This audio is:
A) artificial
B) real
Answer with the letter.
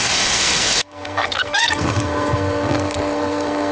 A